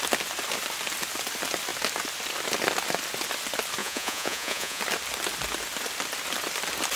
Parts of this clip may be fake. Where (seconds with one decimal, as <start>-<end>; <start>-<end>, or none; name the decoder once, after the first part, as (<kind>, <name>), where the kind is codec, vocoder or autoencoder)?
3.8-4.8 (vocoder, Vocos)